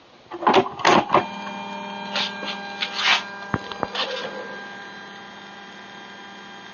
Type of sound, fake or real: real